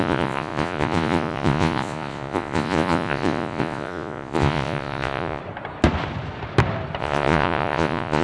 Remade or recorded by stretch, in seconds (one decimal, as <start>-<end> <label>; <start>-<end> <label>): 0.0-5.4 remade; 5.4-7.0 recorded; 7.0-8.2 remade